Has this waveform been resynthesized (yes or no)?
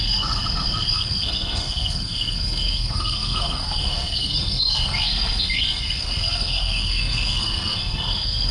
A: yes